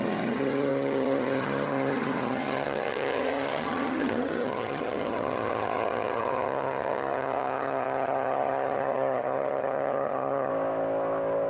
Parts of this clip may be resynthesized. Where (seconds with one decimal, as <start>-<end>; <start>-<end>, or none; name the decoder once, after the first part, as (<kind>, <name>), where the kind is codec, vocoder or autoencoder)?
0.0-10.5 (vocoder, HiFi-GAN)